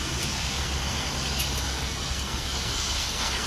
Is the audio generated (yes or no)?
yes